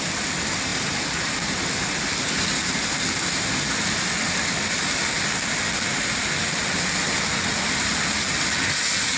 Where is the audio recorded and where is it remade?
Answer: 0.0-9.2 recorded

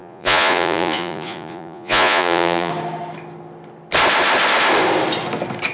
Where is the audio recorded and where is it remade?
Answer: 0.0-2.7 remade; 2.7-5.7 recorded

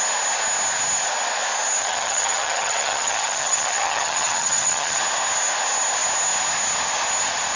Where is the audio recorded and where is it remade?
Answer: 0.0-1.8 recorded; 1.8-5.0 remade; 5.0-7.6 recorded

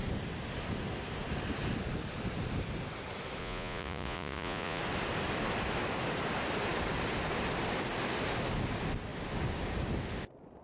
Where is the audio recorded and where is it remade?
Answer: 0.0-3.4 recorded; 3.4-4.8 remade; 4.8-10.6 recorded

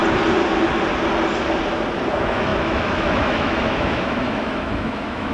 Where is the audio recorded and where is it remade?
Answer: 0.0-2.1 recorded; 2.1-5.3 remade

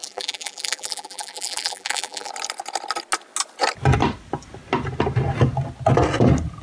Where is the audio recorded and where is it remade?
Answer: 0.0-2.3 remade; 2.3-6.6 recorded